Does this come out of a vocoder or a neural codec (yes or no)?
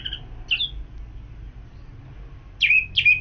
no